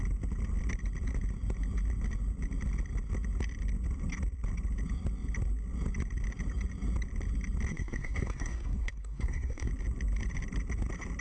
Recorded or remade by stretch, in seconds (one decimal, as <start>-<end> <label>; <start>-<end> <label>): 0.0-7.7 recorded; 7.7-9.7 remade; 9.7-11.2 recorded